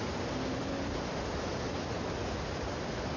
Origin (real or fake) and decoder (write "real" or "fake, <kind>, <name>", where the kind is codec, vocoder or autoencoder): real